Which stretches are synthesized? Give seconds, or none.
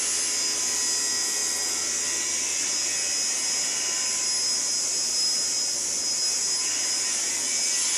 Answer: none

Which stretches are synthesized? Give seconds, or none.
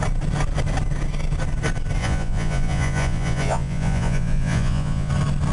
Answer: 2.0-5.1 (vocoder, Vocos)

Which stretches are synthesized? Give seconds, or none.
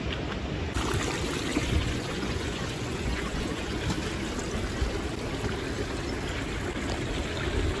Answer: 1.5-3.8 (vocoder, Vocos)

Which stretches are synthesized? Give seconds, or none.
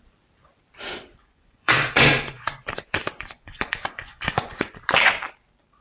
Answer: 1.2-4.7 (vocoder, Vocos)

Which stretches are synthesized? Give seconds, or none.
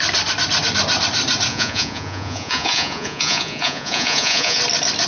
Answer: 1.5-4.6 (vocoder, Vocos)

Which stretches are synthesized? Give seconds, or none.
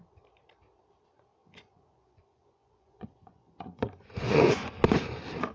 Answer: 1.4-4.7 (vocoder, Vocos)